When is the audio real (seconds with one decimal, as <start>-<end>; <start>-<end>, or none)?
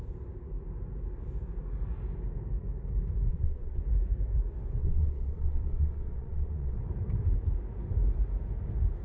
0.0-3.3; 3.8-4.8; 6.8-9.0